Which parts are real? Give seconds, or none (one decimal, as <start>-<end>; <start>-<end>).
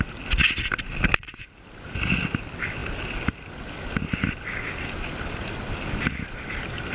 0.0-6.9